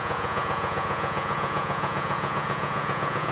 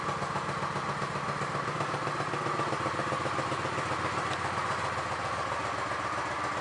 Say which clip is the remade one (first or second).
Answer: first